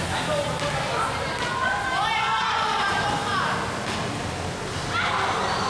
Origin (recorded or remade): recorded